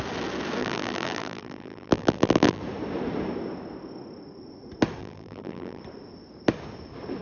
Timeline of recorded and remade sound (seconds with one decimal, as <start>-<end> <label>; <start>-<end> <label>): 0.0-0.6 recorded; 0.6-2.6 remade; 2.6-5.0 recorded; 5.0-5.8 remade; 5.8-7.2 recorded